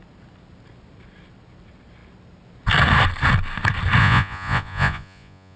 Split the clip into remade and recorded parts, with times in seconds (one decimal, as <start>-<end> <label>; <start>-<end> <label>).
0.0-4.0 recorded; 4.0-5.6 remade